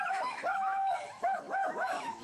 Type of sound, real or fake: fake